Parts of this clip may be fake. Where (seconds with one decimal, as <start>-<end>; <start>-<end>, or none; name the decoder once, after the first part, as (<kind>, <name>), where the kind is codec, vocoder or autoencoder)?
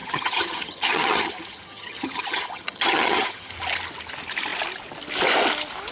0.0-3.5 (vocoder, HiFi-GAN)